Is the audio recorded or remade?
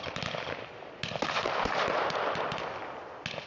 recorded